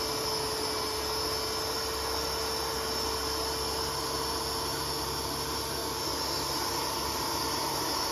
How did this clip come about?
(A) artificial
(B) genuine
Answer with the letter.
B